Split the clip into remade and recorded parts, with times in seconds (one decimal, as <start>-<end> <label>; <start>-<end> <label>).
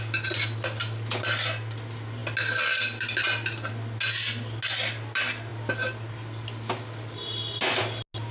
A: 0.0-8.3 recorded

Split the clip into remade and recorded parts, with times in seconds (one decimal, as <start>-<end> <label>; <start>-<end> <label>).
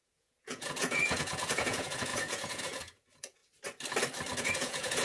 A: 0.0-3.4 remade; 3.4-4.4 recorded; 4.4-5.0 remade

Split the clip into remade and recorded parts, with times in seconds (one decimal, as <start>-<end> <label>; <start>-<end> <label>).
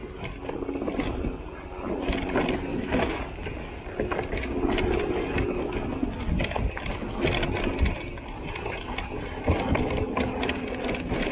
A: 0.0-2.7 recorded; 2.7-3.2 remade; 3.2-11.3 recorded